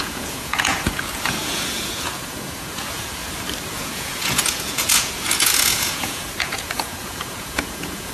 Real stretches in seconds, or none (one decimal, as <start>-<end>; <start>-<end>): 3.2-3.7